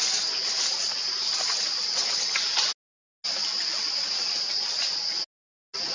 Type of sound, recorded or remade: recorded